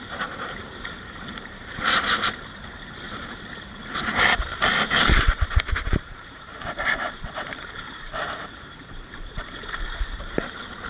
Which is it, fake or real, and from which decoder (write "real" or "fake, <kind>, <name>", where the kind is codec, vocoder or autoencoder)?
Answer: fake, vocoder, BigVGAN v2